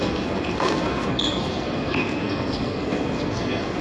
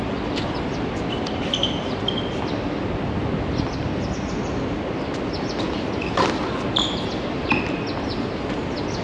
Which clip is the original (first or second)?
second